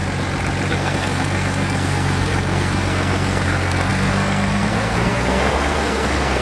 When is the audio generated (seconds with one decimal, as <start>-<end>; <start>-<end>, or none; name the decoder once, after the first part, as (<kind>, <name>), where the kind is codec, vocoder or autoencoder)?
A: 0.7-6.4 (codec, SNAC)

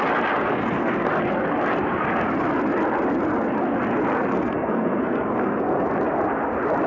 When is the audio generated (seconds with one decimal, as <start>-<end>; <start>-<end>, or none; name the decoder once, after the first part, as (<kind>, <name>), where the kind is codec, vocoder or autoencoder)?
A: 0.5-1.1 (codec, SNAC); 4.3-5.9

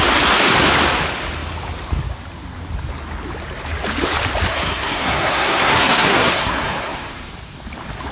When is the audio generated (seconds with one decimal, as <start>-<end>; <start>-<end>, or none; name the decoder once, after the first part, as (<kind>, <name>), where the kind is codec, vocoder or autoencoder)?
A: 4.5-7.3 (codec, SNAC)